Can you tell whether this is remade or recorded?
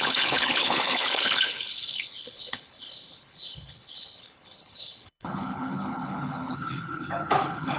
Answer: remade